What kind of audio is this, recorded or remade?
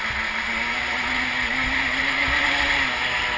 recorded